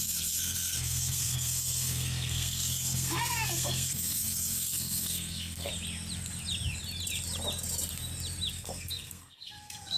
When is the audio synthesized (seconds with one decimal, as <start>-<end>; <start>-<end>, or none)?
0.0-5.7; 8.5-10.0